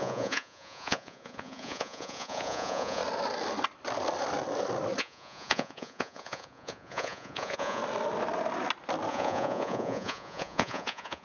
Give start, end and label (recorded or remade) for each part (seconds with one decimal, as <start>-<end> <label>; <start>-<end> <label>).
0.0-3.0 remade; 3.0-5.0 recorded; 5.0-7.8 remade; 7.8-9.1 recorded; 9.1-11.2 remade